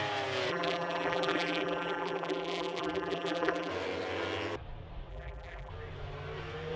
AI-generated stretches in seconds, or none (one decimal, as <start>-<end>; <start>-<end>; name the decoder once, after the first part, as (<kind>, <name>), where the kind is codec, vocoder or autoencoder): 0.5-3.7 (vocoder, BigVGAN v2); 5.1-5.7

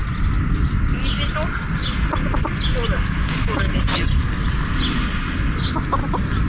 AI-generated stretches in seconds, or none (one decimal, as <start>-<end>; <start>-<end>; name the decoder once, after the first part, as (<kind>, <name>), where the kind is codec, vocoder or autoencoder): none

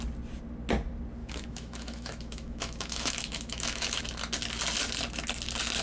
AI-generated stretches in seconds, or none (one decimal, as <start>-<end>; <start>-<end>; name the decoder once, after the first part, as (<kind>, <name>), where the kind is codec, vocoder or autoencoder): 1.2-4.0 (autoencoder, DAC-VAE)

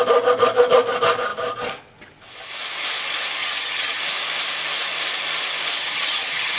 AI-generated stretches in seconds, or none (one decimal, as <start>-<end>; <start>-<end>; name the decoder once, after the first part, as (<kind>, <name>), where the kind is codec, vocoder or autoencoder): 3.4-4.0 (vocoder, HiFi-GAN); 5.8-6.6

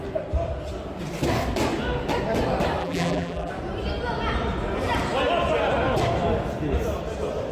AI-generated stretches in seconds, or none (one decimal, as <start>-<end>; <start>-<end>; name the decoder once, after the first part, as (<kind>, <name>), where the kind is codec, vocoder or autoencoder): 2.8-3.5 (vocoder, BigVGAN v2)